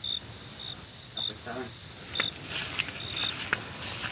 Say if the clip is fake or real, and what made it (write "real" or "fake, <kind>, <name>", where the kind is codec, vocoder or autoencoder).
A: real